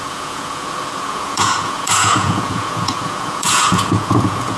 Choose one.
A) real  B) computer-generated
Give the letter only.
B